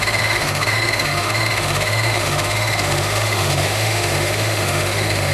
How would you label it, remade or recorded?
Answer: remade